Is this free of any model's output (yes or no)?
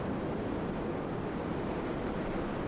yes